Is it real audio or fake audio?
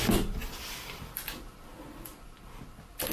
real